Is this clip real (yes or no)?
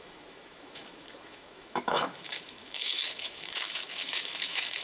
no